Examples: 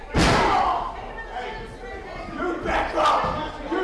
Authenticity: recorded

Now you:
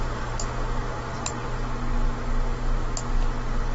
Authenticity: recorded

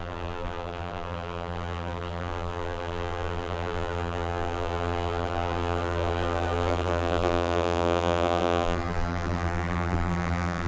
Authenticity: remade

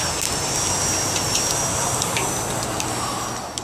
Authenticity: recorded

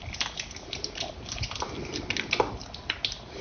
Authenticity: recorded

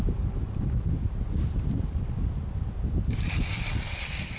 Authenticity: recorded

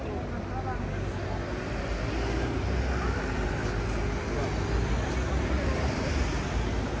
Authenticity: recorded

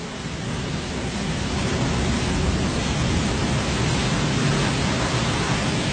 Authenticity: recorded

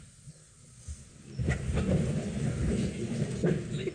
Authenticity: recorded